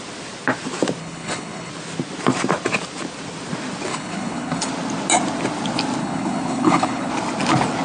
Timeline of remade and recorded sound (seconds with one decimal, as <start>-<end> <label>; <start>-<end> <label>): 0.0-1.0 recorded; 1.0-1.7 remade; 1.7-3.9 recorded; 3.9-4.7 remade; 4.7-6.0 recorded; 6.0-7.1 remade; 7.1-7.8 recorded

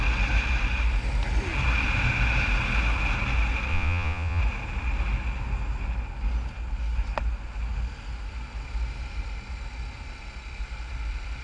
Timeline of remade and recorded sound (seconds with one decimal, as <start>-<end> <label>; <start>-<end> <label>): 0.0-3.7 recorded; 3.7-4.4 remade; 4.4-11.4 recorded

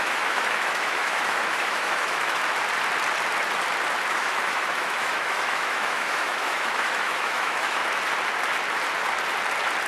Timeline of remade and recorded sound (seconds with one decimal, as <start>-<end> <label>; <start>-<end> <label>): 0.0-2.4 remade; 2.4-4.1 recorded; 4.1-7.8 remade; 7.8-9.9 recorded

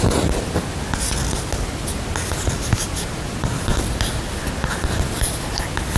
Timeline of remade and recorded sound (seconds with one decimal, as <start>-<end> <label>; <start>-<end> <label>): 0.0-6.0 recorded

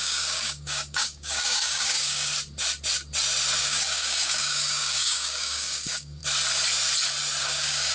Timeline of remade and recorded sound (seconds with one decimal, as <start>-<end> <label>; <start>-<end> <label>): 0.0-2.3 remade; 2.3-3.6 recorded; 3.6-6.2 remade; 6.2-7.4 recorded; 7.4-7.9 remade

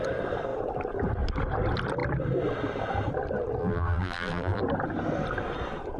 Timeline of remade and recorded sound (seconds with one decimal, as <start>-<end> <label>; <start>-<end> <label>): 0.0-3.6 recorded; 3.6-4.6 remade; 4.6-6.0 recorded

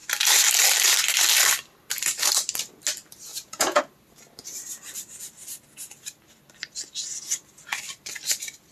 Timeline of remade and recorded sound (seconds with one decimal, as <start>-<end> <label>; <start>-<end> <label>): 0.0-3.3 recorded; 3.3-3.8 remade; 3.8-8.7 recorded

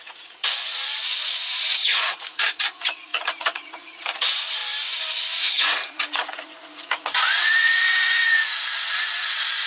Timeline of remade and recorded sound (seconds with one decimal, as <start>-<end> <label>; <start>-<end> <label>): 0.0-4.6 remade; 4.6-5.6 recorded; 5.6-9.7 remade